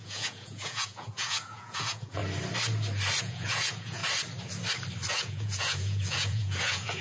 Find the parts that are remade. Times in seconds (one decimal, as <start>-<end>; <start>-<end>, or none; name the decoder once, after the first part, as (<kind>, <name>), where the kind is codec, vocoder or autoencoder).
0.0-2.2 (vocoder, Vocos); 3.2-4.0; 5.1-7.0